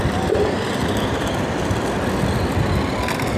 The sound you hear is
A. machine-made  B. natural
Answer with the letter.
B